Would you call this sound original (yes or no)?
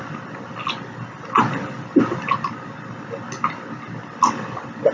yes